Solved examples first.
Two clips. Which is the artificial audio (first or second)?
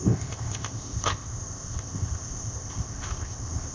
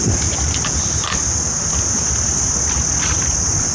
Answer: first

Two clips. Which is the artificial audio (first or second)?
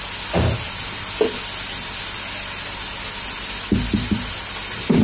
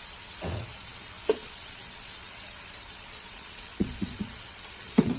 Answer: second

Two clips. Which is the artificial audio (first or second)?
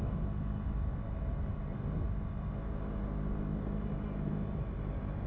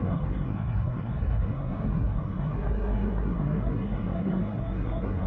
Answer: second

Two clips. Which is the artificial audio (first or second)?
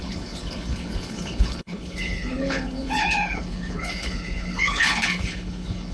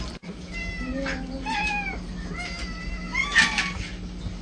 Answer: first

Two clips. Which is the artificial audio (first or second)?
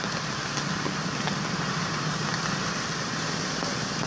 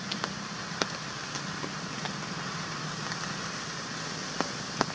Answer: first